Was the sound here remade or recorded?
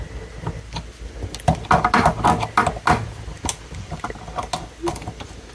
recorded